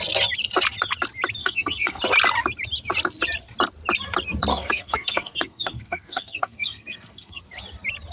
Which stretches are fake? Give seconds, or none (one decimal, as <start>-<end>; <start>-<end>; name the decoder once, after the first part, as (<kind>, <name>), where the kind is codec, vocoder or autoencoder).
1.4-2.0 (codec, SNAC); 4.5-7.4

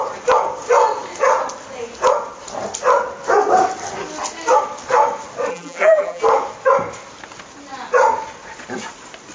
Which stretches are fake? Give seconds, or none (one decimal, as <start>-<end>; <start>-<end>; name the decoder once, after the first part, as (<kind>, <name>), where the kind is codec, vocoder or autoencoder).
5.5-6.2 (vocoder, BigVGAN v2)

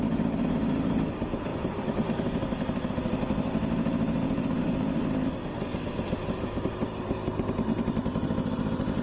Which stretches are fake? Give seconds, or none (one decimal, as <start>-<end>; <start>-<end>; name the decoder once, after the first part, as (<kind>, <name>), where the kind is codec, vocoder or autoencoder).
0.0-9.0 (vocoder, BigVGAN v2)

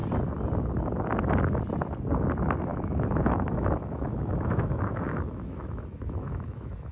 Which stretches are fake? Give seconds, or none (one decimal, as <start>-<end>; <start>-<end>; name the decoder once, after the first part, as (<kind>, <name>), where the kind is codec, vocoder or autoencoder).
2.7-6.9 (autoencoder, DAC-VAE)

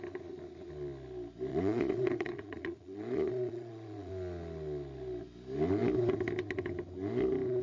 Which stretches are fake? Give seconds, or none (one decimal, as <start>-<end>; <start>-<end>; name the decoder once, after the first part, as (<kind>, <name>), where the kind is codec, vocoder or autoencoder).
1.5-4.1 (vocoder, Vocos)

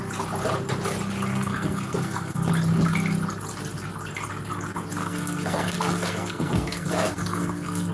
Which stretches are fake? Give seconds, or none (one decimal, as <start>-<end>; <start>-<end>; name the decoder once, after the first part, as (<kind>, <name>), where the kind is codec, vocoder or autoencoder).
1.3-2.5 (codec, SNAC); 5.0-7.9